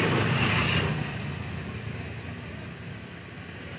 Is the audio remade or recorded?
recorded